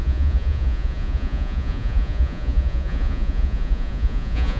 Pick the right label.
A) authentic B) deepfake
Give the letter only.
B